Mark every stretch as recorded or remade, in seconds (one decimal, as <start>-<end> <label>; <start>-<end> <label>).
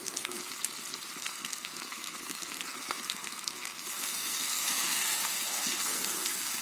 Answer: 0.0-0.4 remade; 0.4-1.2 recorded; 1.2-6.6 remade